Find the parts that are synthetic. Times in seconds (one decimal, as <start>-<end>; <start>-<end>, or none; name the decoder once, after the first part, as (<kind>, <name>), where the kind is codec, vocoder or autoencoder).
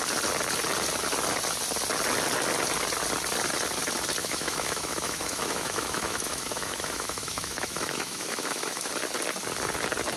4.2-8.9 (autoencoder, DAC-VAE)